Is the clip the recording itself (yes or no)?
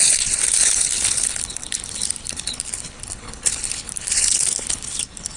no